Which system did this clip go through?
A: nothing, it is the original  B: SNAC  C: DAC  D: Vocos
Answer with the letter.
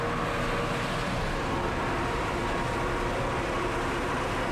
A